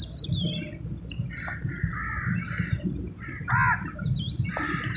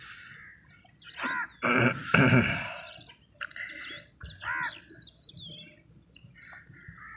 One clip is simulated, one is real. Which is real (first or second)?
second